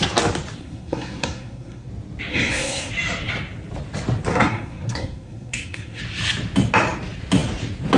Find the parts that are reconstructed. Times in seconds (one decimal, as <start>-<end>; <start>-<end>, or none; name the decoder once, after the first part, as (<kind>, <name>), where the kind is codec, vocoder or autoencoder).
0.6-1.9 (codec, SNAC); 2.3-2.9; 4.3-6.0